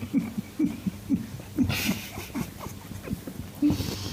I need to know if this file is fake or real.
real